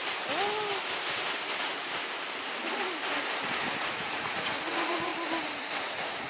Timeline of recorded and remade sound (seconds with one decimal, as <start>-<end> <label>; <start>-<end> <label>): 0.0-3.8 recorded; 3.8-5.1 remade; 5.1-5.6 recorded; 5.6-6.3 remade